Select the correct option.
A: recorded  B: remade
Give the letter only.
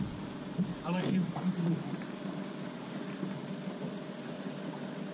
A